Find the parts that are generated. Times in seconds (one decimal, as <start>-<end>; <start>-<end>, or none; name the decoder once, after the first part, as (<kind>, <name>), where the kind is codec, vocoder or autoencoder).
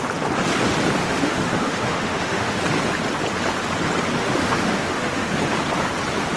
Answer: 1.0-2.6 (autoencoder, DAC-VAE); 4.2-5.3